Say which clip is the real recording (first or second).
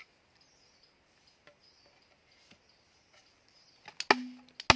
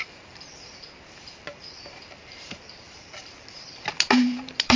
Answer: first